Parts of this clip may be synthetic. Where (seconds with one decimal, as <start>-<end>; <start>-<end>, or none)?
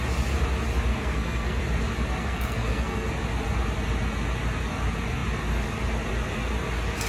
0.9-1.6; 2.2-3.1